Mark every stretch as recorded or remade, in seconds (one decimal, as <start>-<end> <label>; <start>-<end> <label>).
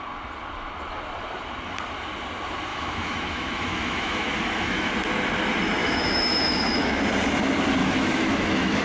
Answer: 0.0-2.7 recorded; 2.7-4.9 remade; 4.9-5.8 recorded; 5.8-7.0 remade; 7.0-7.8 recorded; 7.8-8.8 remade